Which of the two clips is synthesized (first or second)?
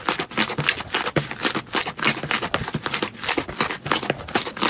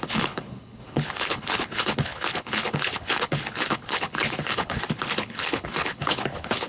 second